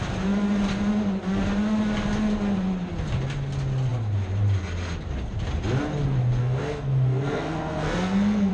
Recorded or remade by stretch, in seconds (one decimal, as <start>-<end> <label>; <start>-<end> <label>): 0.0-6.4 recorded; 6.4-8.5 remade